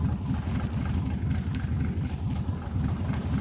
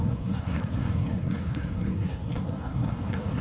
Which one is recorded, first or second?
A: first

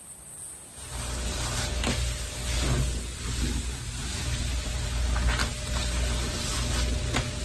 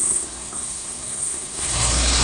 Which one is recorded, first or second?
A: first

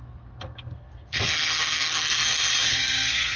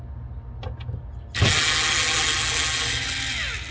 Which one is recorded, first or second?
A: second